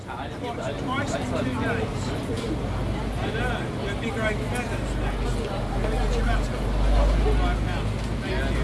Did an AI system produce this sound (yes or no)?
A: no